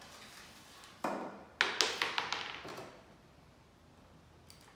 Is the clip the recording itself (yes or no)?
yes